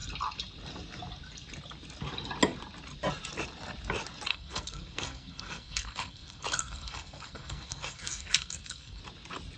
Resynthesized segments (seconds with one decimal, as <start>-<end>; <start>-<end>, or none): 4.3-9.0